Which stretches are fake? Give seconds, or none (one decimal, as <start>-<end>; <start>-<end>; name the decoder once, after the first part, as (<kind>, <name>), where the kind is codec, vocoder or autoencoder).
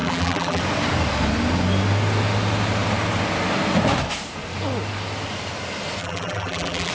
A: 0.0-0.6 (vocoder, BigVGAN v2); 6.0-6.9